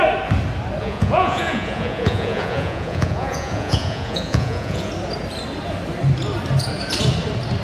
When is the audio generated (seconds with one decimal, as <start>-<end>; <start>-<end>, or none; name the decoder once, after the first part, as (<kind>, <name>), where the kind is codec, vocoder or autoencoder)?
0.8-4.9 (vocoder, Vocos)